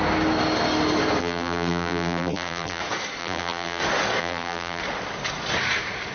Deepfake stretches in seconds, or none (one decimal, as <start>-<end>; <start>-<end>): 1.2-2.8; 3.2-3.8; 4.2-4.8